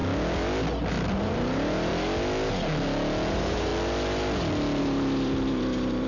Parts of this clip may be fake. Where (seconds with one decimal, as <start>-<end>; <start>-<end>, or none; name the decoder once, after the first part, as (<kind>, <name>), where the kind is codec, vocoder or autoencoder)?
0.9-1.9 (vocoder, BigVGAN v2); 3.3-3.7; 4.8-6.1